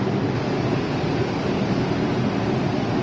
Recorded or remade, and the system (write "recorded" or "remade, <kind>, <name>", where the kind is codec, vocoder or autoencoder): recorded